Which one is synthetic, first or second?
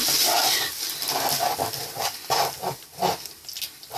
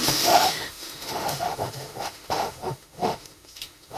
second